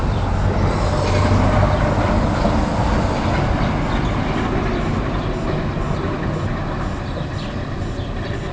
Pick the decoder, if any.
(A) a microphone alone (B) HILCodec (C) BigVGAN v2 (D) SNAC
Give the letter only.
A